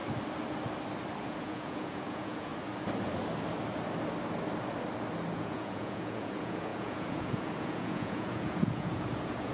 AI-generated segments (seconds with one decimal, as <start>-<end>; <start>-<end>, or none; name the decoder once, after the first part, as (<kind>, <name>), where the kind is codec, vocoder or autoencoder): 1.2-2.5 (vocoder, Vocos); 5.3-9.5